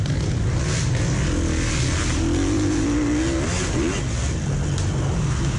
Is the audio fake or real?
real